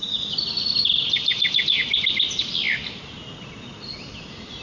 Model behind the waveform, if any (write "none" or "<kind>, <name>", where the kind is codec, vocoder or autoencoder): none